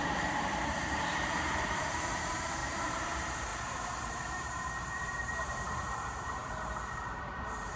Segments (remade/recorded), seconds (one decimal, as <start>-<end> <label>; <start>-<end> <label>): 0.0-3.5 remade; 3.5-4.1 recorded; 4.1-7.8 remade